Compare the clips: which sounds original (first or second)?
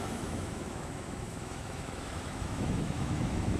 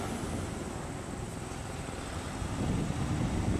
second